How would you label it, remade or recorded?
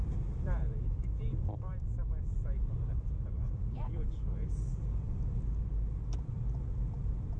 remade